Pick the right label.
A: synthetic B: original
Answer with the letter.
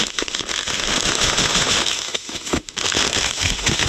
A